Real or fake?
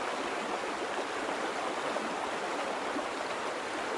real